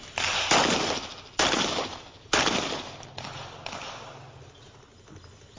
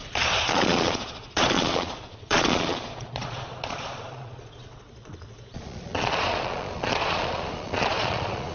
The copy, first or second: second